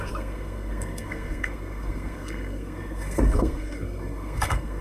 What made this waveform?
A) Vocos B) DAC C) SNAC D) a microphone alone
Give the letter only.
C